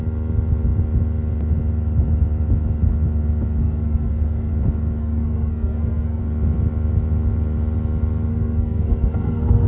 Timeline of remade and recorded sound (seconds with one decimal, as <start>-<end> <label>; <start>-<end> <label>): 0.0-3.6 recorded; 3.6-4.5 remade; 4.5-5.0 recorded; 5.0-6.2 remade; 6.2-8.3 recorded; 8.3-9.7 remade